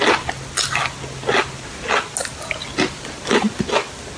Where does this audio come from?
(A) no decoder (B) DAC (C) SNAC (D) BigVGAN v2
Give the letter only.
A